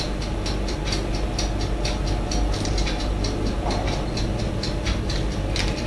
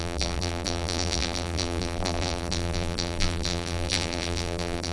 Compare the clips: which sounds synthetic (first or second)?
second